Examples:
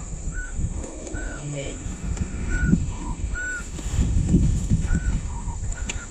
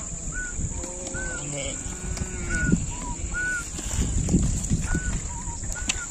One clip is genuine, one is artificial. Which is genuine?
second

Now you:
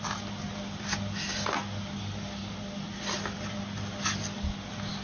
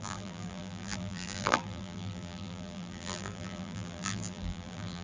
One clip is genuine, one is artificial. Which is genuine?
first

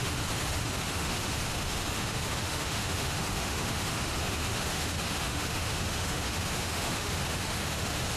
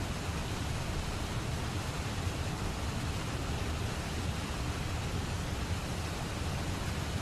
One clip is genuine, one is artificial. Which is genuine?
second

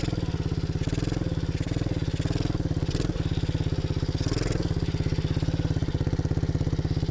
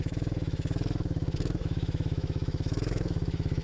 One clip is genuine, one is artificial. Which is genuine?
first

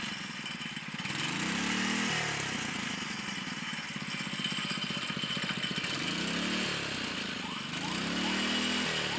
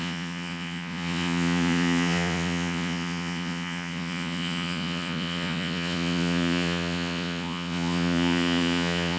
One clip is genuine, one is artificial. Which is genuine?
first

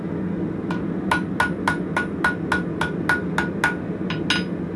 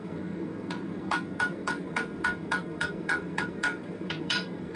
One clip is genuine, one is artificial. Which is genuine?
first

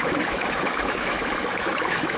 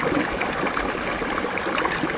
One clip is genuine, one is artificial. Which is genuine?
second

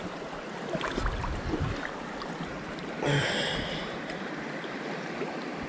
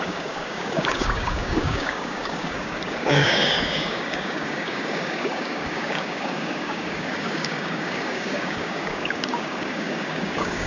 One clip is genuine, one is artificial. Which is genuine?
first